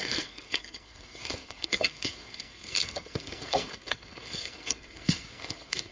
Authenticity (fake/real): fake